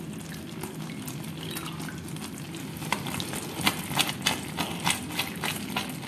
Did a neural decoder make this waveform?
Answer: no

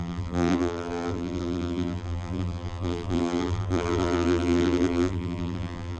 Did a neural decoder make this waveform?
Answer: yes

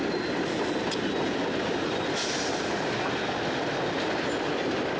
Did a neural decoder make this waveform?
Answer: no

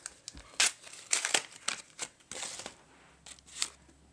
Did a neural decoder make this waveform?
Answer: no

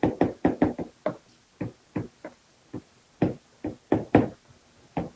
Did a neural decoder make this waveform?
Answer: no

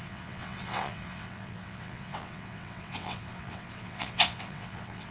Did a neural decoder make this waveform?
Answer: yes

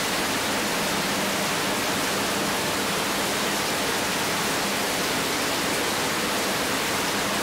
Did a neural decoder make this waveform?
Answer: no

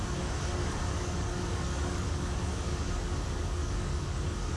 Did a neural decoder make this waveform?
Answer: yes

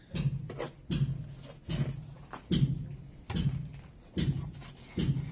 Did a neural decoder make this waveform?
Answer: no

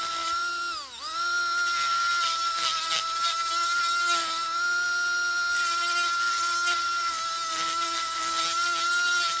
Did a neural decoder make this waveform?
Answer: no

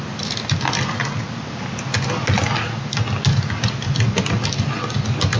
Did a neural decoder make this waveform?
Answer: no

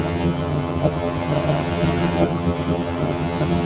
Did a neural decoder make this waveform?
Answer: yes